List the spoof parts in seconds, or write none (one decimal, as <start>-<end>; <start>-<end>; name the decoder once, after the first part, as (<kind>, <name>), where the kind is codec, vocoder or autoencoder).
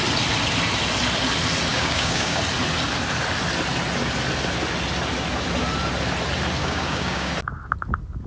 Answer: 1.7-2.4 (codec, DAC); 6.6-7.3